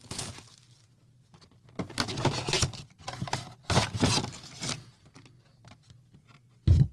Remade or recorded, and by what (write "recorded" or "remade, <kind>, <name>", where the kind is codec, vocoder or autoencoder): recorded